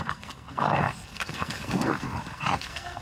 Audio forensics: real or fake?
fake